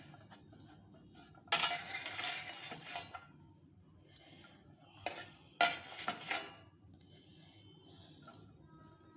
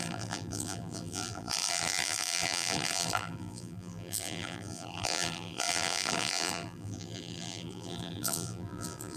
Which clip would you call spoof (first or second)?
second